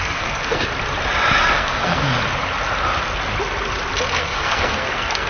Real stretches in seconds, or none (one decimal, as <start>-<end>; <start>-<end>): 0.7-1.4; 2.0-4.1